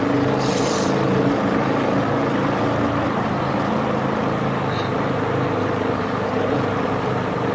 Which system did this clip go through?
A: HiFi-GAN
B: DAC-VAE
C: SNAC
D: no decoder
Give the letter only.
D